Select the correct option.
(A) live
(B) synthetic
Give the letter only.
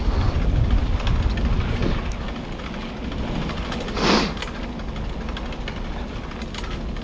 A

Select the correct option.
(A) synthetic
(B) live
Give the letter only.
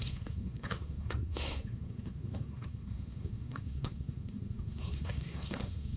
A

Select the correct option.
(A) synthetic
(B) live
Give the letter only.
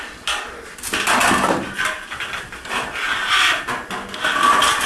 B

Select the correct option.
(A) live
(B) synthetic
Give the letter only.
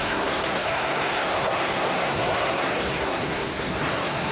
B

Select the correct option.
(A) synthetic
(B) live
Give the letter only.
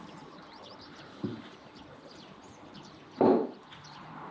A